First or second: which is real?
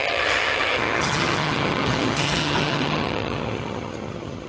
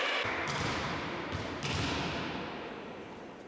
second